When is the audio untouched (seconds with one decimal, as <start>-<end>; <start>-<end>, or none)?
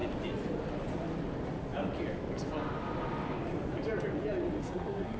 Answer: 0.0-4.6